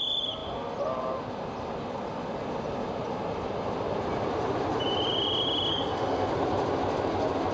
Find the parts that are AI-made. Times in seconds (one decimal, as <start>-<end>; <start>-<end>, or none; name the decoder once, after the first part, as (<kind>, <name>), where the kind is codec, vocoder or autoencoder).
5.7-6.3 (codec, SNAC)